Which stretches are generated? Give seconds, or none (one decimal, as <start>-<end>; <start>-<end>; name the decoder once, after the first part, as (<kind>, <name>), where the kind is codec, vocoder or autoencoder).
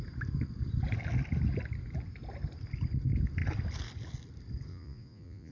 4.7-5.5 (vocoder, Vocos)